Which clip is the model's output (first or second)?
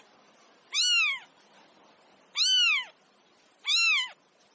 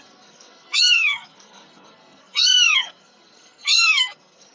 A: second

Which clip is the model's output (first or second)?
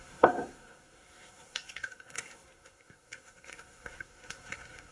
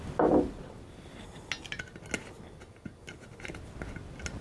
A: first